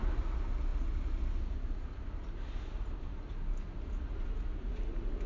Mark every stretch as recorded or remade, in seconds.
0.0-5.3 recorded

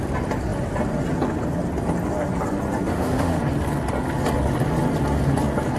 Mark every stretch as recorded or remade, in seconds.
0.0-2.9 recorded; 2.9-3.4 remade; 3.4-5.8 recorded

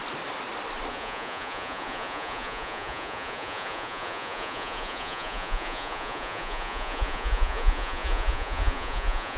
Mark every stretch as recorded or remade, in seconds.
0.0-0.9 recorded; 0.9-9.4 remade